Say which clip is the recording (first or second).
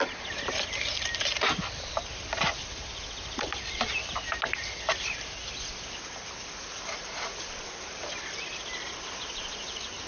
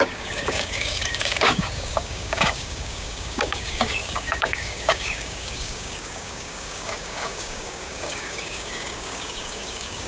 first